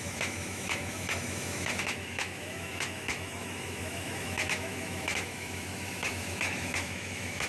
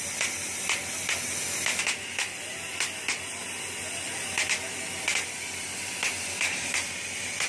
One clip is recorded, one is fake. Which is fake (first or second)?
first